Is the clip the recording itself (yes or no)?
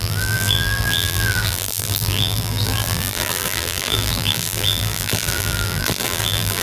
no